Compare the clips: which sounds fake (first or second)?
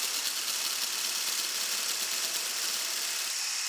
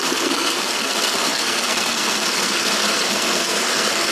second